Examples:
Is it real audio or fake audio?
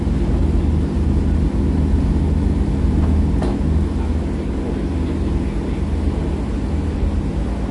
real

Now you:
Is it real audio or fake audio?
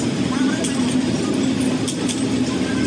real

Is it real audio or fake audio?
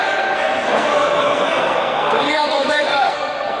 fake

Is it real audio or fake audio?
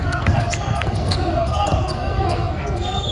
fake